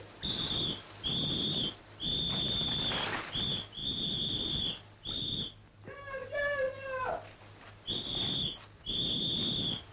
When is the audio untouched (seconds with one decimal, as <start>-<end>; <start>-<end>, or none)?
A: 0.0-9.9